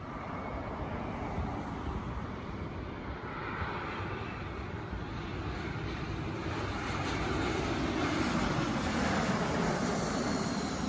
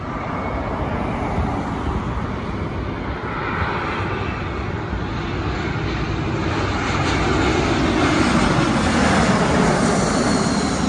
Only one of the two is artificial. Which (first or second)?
first